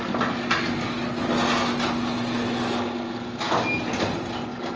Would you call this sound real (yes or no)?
yes